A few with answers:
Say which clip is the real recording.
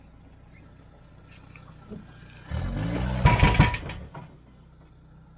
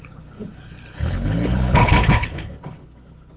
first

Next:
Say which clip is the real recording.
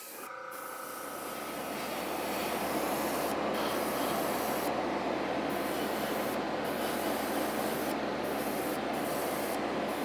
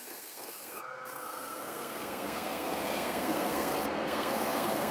first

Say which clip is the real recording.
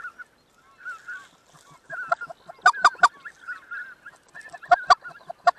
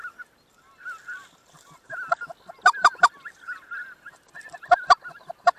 first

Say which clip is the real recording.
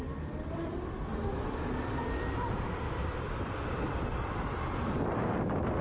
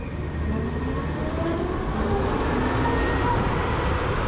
second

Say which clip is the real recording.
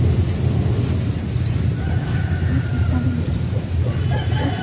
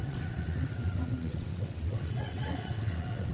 first